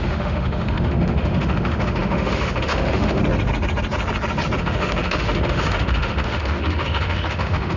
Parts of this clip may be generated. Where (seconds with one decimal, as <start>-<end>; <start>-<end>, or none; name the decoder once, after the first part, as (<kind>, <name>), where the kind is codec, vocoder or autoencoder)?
0.0-3.2 (autoencoder, DAC-VAE); 4.6-7.8